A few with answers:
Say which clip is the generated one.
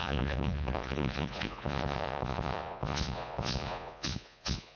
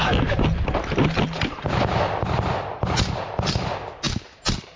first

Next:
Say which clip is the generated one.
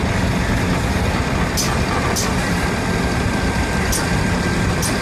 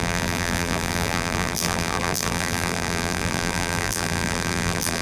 second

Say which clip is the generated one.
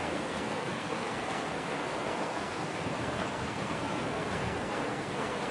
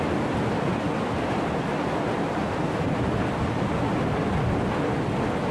first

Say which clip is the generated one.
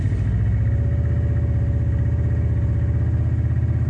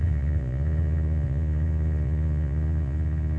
second